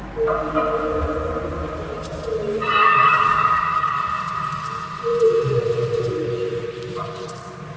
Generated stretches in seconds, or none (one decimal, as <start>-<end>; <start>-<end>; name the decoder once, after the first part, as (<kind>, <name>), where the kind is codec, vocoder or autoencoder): 2.8-4.0 (codec, DAC)